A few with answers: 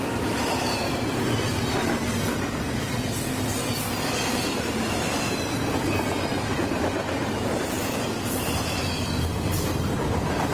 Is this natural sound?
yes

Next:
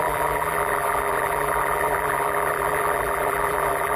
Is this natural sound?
no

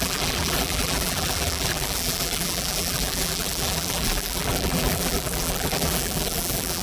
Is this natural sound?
no